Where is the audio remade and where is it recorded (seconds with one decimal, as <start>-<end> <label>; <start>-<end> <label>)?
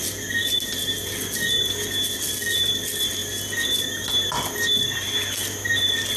0.0-6.2 recorded